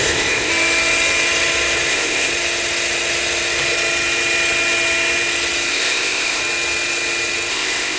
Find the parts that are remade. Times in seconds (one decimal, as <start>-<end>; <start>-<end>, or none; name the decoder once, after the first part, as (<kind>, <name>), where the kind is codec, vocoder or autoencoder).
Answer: 0.0-0.5 (codec, ZipCodec); 1.9-2.3; 5.7-6.4; 7.5-8.0